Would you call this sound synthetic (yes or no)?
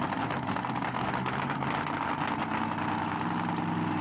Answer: no